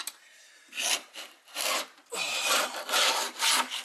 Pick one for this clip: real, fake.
real